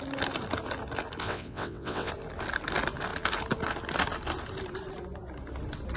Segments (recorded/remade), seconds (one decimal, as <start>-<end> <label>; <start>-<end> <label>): 0.0-1.2 recorded; 1.2-2.1 remade; 2.1-6.0 recorded